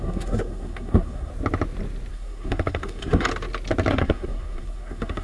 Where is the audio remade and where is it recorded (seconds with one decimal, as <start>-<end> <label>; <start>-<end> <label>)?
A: 0.0-1.3 remade; 1.3-2.1 recorded; 2.1-3.3 remade; 3.3-3.9 recorded; 3.9-5.2 remade